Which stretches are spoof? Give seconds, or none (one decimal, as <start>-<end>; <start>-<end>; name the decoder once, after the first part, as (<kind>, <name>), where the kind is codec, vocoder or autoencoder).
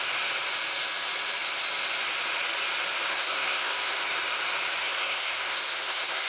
3.1-4.0 (codec, SNAC); 4.8-6.3